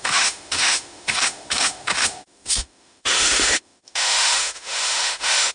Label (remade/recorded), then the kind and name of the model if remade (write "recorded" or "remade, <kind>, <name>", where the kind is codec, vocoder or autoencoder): remade, autoencoder, DAC-VAE